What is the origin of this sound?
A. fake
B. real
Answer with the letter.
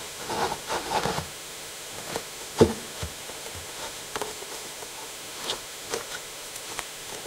A